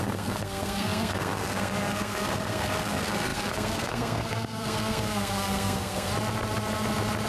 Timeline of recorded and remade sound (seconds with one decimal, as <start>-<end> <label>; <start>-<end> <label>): 0.0-6.1 remade; 6.1-7.3 recorded